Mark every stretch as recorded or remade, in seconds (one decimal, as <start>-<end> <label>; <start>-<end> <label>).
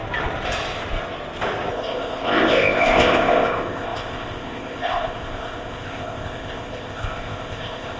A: 0.0-1.7 recorded; 1.7-8.0 remade